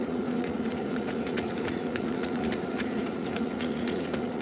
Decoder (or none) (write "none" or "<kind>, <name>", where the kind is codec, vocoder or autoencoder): vocoder, Vocos